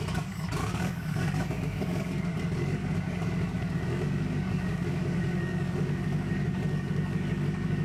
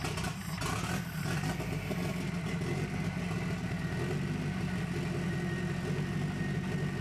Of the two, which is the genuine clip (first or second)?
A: second